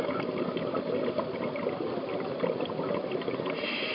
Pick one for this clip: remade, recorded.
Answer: recorded